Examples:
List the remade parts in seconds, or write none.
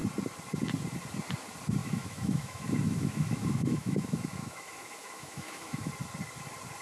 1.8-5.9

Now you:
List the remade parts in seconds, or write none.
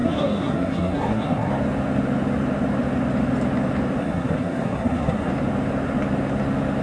0.0-1.5; 4.0-5.3